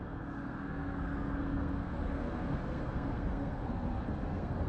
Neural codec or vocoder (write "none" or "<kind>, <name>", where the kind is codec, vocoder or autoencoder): codec, SNAC